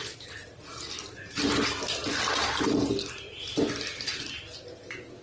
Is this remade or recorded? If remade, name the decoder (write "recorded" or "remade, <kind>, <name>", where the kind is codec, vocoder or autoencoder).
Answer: recorded